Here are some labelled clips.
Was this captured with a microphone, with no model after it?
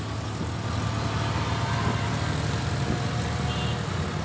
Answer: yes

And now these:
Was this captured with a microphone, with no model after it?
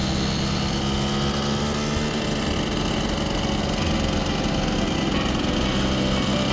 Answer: yes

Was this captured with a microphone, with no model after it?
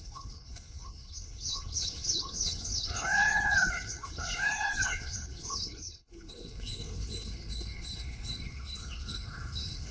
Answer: no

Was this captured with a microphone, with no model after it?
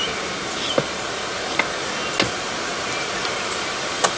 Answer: yes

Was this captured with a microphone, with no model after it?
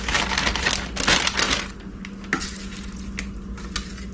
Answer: yes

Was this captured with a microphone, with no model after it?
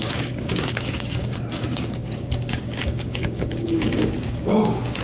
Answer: no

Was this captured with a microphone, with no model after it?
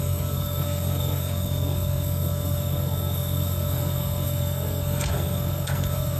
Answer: no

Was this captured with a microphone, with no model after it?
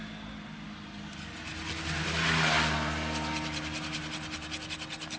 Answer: yes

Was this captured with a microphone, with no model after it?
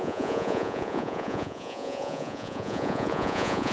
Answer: no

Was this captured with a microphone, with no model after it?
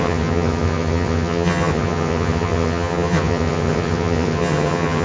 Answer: no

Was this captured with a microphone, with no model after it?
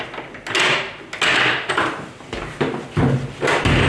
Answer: yes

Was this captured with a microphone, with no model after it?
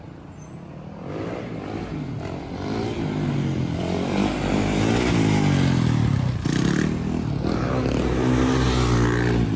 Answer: yes